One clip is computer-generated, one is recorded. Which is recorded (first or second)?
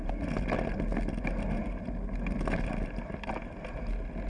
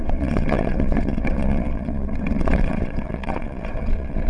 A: first